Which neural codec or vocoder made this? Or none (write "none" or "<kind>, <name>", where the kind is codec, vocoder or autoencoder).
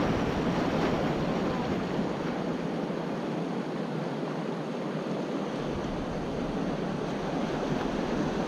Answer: none